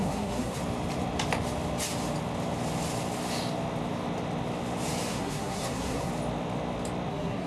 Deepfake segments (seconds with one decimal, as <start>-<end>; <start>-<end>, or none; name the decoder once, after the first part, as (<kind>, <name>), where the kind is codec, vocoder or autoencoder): 0.0-0.6 (codec, SNAC); 5.1-6.1; 7.1-7.5